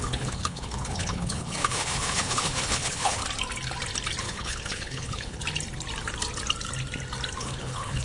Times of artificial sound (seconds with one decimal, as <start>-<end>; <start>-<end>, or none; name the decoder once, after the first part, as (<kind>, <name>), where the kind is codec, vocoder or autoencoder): 0.0-3.2 (codec, HILCodec); 4.2-5.4; 7.4-8.0